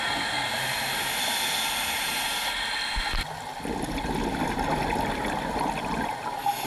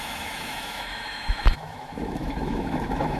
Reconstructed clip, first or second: second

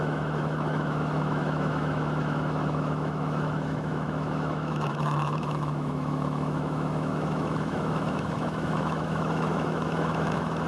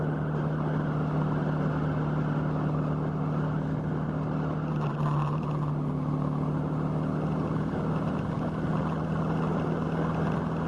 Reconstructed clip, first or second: first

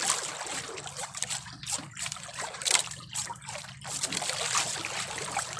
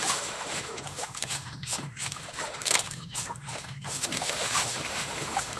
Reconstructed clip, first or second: second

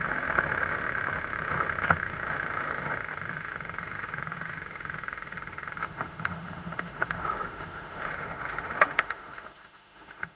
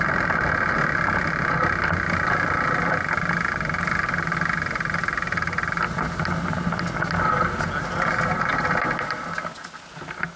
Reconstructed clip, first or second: first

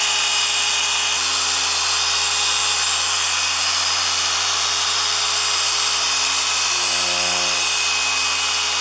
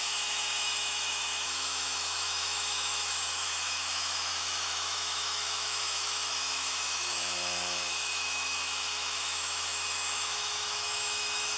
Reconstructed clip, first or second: second